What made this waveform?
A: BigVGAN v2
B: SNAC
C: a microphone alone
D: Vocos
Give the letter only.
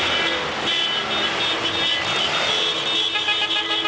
C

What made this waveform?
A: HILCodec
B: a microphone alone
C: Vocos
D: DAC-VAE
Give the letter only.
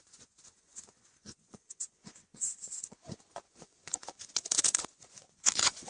C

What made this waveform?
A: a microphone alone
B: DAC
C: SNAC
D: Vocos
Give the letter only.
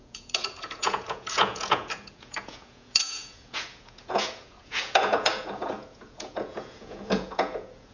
D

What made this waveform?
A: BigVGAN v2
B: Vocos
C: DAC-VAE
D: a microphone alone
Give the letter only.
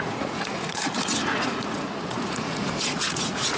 B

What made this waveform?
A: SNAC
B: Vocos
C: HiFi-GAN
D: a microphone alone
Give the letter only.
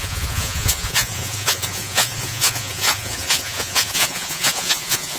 B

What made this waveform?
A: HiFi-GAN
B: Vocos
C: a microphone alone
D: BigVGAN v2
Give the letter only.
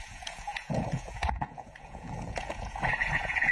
B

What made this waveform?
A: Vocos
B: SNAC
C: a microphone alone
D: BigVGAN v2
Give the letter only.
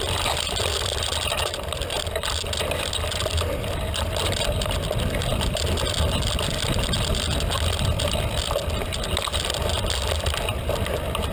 C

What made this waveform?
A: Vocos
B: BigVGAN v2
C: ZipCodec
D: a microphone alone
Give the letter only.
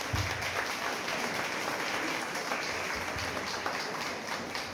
D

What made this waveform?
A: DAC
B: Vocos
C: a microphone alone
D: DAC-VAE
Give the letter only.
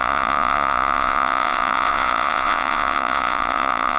B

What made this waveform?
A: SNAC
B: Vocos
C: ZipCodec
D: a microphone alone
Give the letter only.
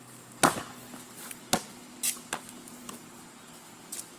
D